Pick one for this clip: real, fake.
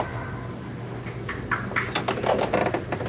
real